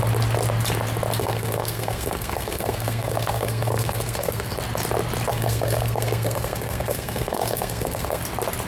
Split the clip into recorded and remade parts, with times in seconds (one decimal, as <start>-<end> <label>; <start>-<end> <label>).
0.0-1.2 recorded; 1.2-4.6 remade; 4.6-5.3 recorded; 5.3-8.2 remade; 8.2-8.7 recorded